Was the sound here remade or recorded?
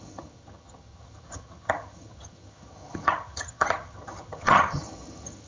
remade